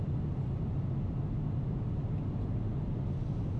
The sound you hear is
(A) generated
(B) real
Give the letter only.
B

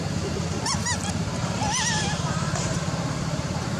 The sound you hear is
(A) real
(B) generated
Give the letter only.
B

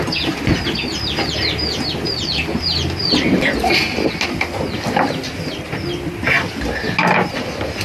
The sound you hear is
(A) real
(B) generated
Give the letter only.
A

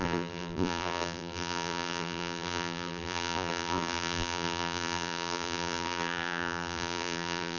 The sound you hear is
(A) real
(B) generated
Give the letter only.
B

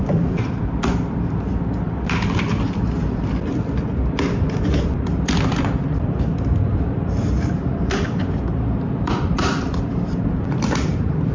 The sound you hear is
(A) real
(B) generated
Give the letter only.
B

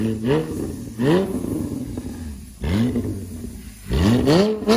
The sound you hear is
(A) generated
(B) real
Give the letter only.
B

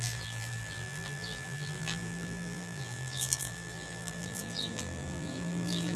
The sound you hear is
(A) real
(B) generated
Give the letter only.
B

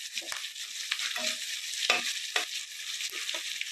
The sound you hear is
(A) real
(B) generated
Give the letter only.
A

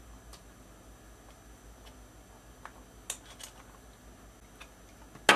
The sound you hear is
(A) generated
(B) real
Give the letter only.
B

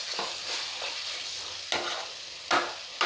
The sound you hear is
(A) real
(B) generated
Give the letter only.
A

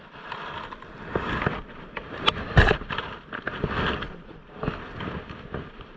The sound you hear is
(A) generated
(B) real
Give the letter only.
A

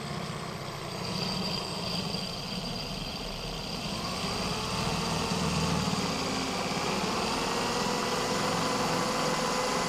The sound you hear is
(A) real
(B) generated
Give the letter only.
A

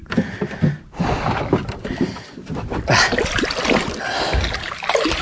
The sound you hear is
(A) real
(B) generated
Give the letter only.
A